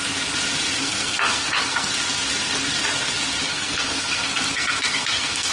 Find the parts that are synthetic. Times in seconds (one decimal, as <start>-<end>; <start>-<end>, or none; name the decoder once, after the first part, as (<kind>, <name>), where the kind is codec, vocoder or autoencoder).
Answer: 0.8-1.9 (codec, SNAC); 3.5-5.5